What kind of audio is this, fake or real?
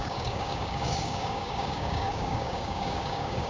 fake